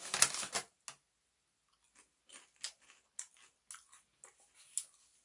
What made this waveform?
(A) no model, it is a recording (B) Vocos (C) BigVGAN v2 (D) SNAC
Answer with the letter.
A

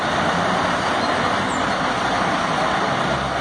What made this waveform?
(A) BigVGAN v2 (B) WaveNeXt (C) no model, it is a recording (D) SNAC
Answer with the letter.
C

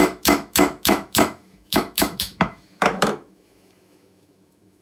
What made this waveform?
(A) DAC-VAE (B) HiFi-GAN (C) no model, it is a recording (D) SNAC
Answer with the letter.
A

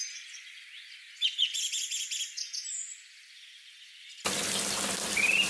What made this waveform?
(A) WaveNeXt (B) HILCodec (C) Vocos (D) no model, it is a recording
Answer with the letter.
D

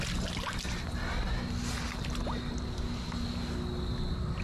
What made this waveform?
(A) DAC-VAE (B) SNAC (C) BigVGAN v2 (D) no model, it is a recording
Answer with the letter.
D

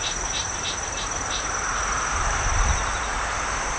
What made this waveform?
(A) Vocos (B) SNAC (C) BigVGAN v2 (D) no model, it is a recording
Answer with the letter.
C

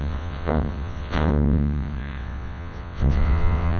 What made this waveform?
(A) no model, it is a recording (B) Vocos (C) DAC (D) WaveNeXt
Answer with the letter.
D